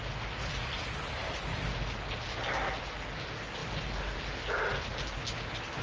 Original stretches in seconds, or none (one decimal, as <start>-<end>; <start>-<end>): 0.0-5.8